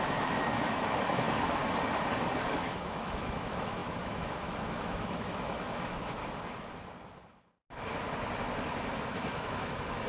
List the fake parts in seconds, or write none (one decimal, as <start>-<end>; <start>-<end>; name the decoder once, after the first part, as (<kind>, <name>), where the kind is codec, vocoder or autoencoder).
0.0-1.6 (autoencoder, DAC-VAE); 2.5-6.2; 9.1-10.1